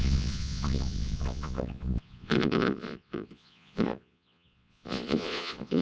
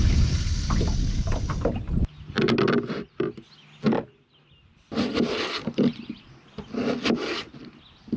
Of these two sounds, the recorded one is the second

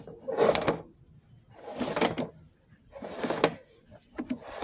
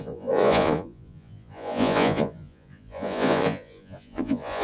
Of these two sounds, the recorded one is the first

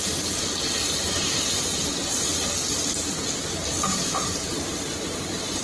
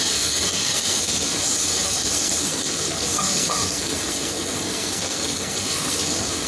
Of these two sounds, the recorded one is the first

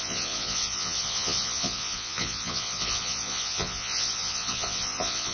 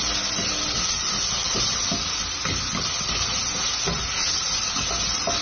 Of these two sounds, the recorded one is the second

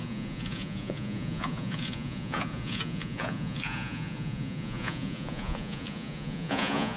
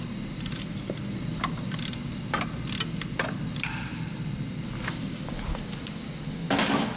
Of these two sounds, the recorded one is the second